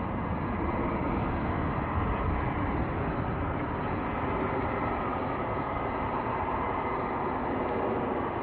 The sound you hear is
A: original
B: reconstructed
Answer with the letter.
A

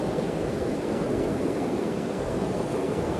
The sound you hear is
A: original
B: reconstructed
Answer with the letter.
B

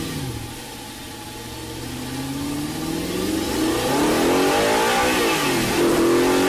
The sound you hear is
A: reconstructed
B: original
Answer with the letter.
B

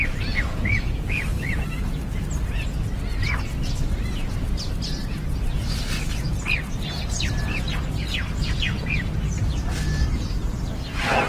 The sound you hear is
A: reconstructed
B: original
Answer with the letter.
B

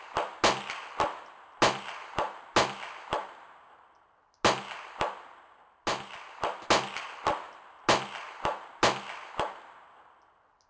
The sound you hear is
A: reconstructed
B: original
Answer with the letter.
B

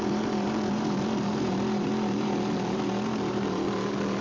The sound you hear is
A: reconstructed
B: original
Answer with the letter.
A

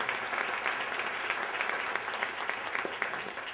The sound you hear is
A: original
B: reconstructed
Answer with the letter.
A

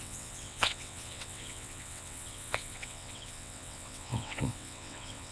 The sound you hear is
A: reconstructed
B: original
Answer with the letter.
A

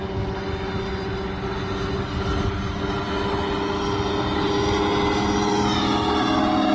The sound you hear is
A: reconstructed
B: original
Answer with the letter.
B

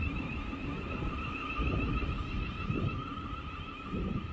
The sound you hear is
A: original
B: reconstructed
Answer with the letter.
B